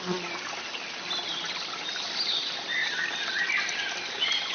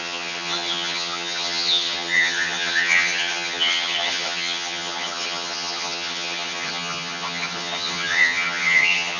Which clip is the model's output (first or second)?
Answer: second